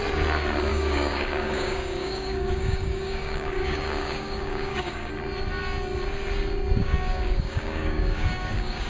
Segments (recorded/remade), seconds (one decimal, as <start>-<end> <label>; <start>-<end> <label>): 0.0-0.7 recorded; 0.7-5.1 remade; 5.1-6.8 recorded; 6.8-8.9 remade